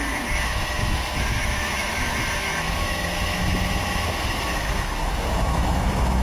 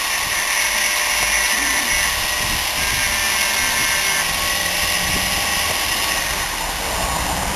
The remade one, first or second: first